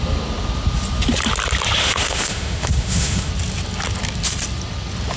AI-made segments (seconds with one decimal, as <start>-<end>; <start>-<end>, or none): 1.8-3.3